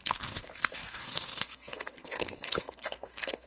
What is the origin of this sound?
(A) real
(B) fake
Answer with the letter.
B